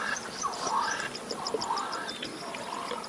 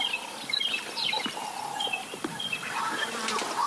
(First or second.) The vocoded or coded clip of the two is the second